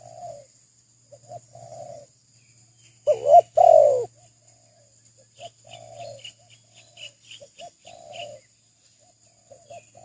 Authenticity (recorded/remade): recorded